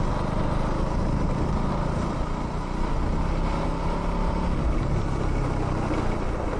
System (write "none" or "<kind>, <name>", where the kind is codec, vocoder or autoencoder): none